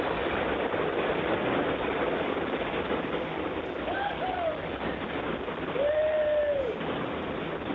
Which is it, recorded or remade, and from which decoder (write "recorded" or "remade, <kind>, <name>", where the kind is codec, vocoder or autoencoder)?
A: recorded